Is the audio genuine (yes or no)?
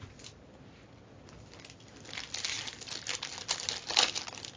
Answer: yes